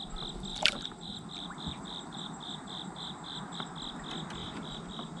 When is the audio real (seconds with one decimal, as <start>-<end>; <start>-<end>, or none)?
0.0-0.5; 3.6-4.4